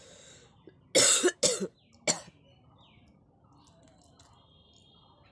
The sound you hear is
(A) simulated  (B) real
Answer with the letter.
B